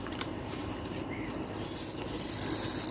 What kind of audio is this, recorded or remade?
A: recorded